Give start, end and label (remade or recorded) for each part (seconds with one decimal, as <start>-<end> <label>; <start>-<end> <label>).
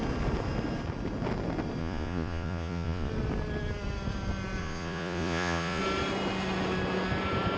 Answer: 0.0-1.8 recorded; 1.8-3.1 remade; 3.1-4.6 recorded; 4.6-5.8 remade; 5.8-7.6 recorded